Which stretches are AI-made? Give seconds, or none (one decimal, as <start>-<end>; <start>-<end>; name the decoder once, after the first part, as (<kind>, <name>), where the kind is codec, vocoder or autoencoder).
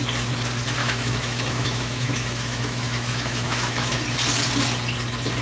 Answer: 0.8-4.0 (autoencoder, DAC-VAE)